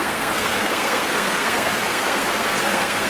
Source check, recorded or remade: remade